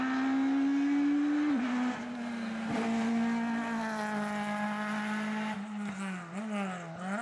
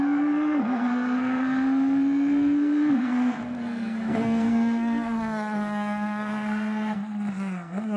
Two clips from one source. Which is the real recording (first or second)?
first